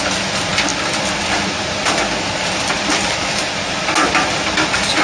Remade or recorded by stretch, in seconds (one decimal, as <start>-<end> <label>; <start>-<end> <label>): 0.0-5.0 recorded